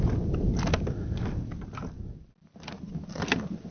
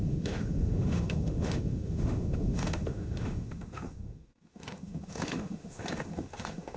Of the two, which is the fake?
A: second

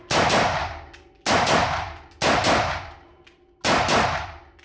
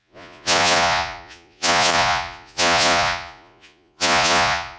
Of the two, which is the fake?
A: second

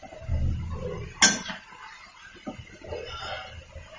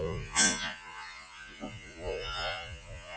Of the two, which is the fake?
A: second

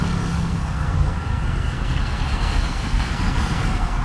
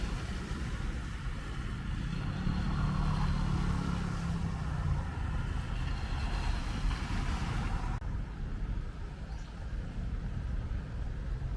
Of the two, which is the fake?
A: first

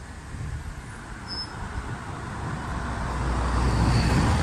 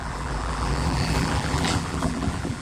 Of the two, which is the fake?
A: second